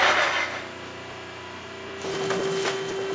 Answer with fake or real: real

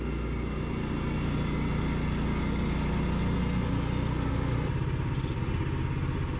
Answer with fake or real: real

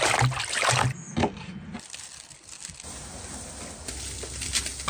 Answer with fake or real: real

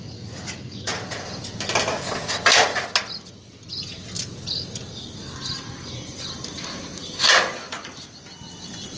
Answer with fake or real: real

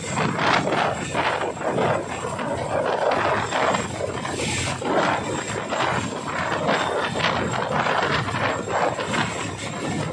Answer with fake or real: real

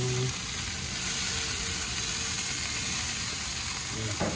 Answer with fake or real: real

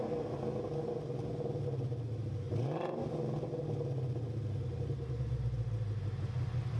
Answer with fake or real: real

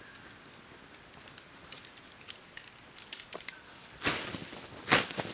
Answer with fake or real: real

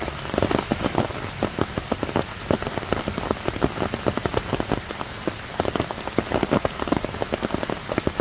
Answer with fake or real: real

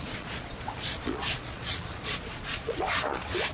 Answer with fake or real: fake